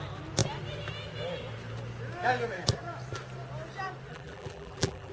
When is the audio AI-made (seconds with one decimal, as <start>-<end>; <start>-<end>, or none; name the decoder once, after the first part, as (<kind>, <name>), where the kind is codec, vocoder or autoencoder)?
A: 4.1-5.1 (vocoder, BigVGAN v2)